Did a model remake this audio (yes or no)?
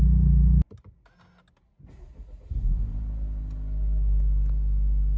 no